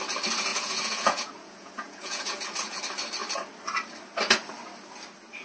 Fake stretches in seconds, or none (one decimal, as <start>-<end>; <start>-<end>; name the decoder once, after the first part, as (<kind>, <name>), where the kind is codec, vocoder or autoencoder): 0.5-2.8 (vocoder, Vocos)